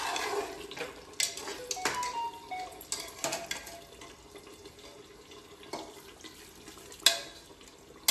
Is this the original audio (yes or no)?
yes